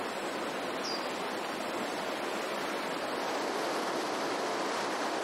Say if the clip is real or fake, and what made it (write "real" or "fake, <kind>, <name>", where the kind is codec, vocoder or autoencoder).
real